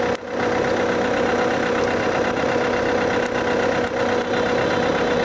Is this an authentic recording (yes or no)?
yes